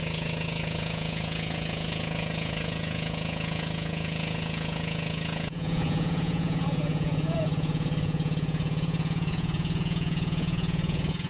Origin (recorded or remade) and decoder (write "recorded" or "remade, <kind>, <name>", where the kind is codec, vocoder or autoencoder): remade, vocoder, Vocos